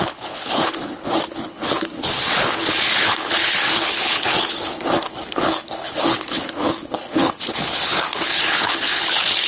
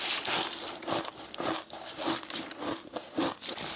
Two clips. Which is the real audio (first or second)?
second